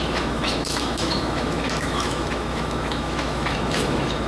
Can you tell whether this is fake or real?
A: fake